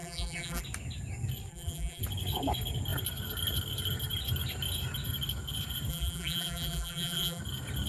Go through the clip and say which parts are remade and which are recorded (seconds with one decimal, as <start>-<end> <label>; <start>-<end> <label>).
0.0-0.6 remade; 0.6-1.5 recorded; 1.5-2.0 remade; 2.0-5.9 recorded; 5.9-7.4 remade; 7.4-7.9 recorded

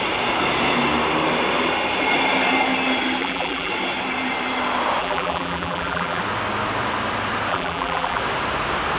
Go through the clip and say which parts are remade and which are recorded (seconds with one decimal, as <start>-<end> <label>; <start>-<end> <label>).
0.0-3.2 recorded; 3.2-3.7 remade; 3.7-5.0 recorded; 5.0-6.2 remade; 6.2-7.5 recorded; 7.5-8.2 remade; 8.2-9.0 recorded